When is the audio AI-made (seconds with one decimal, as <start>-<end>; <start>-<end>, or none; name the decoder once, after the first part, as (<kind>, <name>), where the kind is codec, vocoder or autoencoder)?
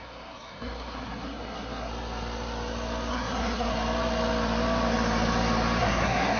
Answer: 0.0-1.9 (codec, SNAC); 3.1-3.7; 5.8-6.4